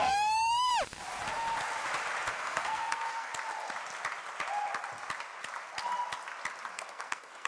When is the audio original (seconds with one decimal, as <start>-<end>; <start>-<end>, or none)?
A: 0.7-2.3; 3.3-6.7